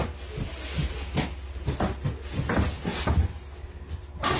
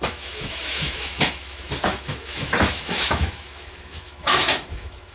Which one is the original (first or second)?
first